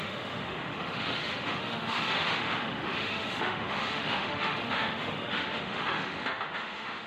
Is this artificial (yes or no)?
yes